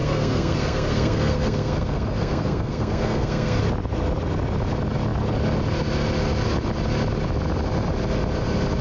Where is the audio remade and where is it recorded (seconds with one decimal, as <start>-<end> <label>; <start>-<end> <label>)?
0.0-3.6 remade; 3.6-8.8 recorded